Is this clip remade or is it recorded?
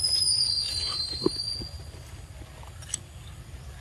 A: recorded